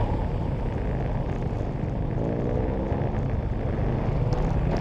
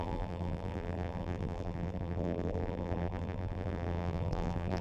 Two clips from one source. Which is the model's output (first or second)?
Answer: second